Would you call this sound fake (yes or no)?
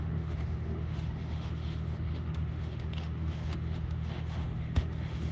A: yes